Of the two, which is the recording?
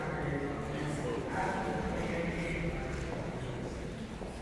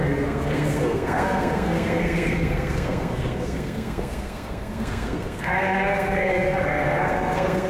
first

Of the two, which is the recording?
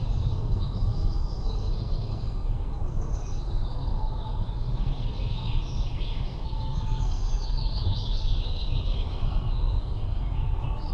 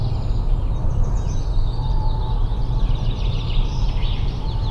second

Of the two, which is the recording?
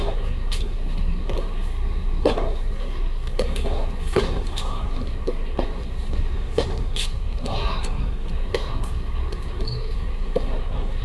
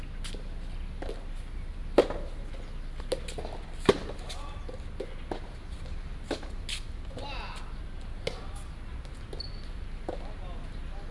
second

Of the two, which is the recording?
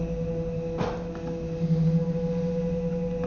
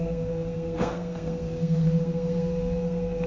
first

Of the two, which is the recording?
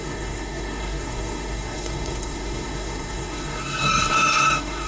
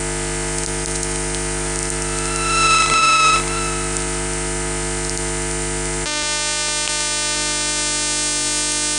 second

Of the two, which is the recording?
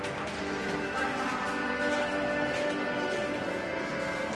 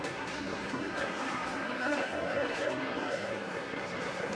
first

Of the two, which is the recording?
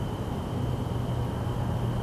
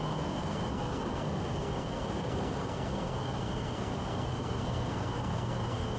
first